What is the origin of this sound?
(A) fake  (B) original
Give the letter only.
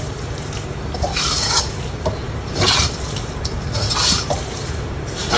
A